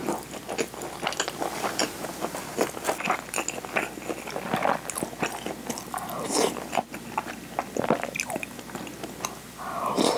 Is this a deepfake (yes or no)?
no